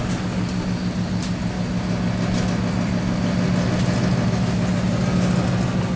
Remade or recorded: recorded